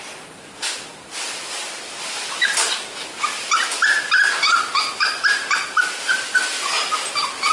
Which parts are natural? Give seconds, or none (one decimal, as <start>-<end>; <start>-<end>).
0.0-7.5